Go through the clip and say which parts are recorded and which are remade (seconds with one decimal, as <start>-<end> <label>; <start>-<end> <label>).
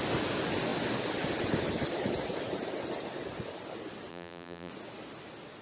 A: 0.0-4.1 recorded; 4.1-4.7 remade; 4.7-5.6 recorded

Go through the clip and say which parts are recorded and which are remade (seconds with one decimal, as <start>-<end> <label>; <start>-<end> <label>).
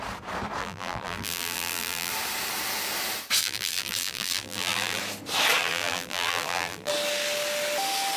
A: 0.0-0.6 recorded; 0.6-2.1 remade; 2.1-3.4 recorded; 3.4-5.0 remade; 5.0-5.6 recorded; 5.6-6.9 remade; 6.9-8.2 recorded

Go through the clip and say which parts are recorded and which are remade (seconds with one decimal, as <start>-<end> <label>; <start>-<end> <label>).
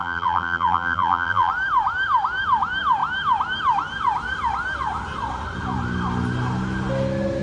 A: 0.0-1.5 remade; 1.5-7.4 recorded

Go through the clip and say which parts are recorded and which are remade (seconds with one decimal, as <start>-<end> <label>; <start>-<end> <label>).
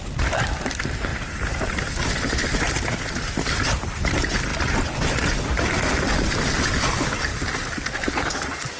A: 0.0-1.1 recorded; 1.1-1.8 remade; 1.8-2.4 recorded; 2.4-3.1 remade; 3.1-8.8 recorded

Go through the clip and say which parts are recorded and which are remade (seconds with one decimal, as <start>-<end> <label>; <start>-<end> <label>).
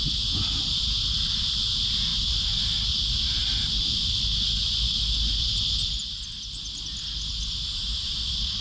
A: 0.0-8.6 recorded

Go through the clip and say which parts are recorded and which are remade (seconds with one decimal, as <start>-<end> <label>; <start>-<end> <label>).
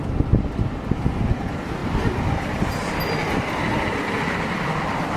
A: 0.0-5.2 recorded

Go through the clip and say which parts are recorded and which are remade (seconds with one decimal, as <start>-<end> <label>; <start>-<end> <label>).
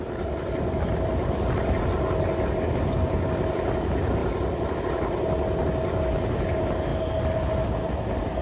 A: 0.0-4.2 recorded; 4.2-4.8 remade; 4.8-8.4 recorded